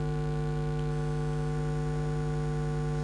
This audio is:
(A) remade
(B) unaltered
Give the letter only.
B